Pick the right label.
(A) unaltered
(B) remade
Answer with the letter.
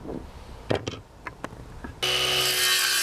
A